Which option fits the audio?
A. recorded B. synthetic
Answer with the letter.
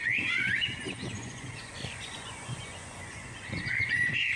B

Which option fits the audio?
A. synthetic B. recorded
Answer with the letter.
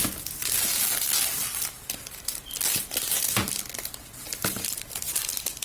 B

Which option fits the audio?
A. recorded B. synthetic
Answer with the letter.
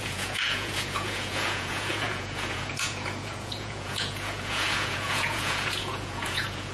B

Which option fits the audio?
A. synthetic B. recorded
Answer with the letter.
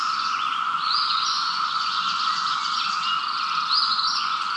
A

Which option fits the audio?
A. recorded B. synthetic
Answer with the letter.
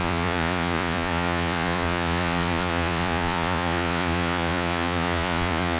B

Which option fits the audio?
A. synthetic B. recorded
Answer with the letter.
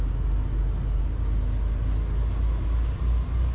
B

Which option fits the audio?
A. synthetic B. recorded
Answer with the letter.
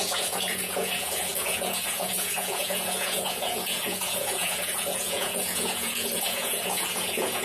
A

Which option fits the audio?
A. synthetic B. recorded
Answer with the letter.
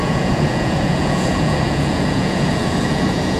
A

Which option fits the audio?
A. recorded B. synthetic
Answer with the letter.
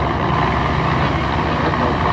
A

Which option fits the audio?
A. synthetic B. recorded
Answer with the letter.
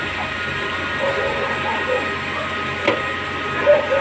B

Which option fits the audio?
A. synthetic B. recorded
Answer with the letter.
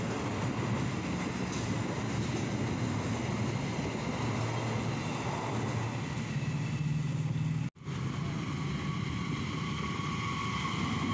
B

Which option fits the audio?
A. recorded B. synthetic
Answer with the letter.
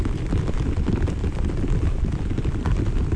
A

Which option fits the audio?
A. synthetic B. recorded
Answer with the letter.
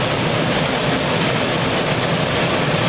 B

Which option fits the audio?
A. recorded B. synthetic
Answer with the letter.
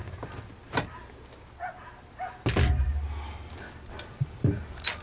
A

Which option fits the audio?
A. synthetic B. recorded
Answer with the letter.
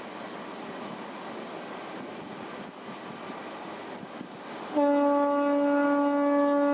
B